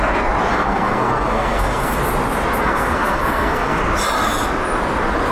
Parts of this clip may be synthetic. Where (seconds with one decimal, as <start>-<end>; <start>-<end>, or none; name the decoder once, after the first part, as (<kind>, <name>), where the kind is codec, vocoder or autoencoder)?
0.5-2.0 (codec, SNAC); 2.6-3.8